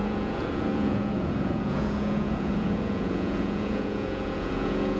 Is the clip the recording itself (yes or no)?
no